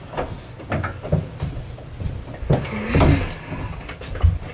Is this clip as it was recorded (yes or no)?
yes